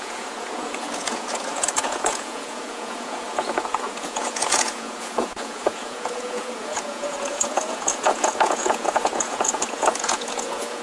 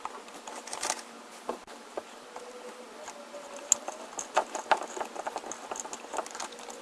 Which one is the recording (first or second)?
second